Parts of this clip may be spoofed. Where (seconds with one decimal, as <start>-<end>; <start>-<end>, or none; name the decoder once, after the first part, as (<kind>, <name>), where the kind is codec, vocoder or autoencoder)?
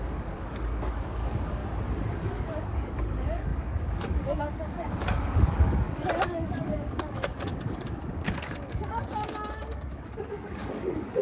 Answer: 0.0-1.6 (codec, DAC); 2.1-11.2